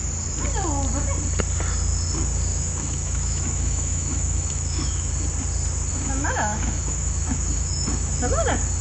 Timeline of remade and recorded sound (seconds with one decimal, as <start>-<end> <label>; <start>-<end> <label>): 0.0-2.5 recorded; 2.5-5.1 remade; 5.1-5.9 recorded; 5.9-8.2 remade; 8.2-8.8 recorded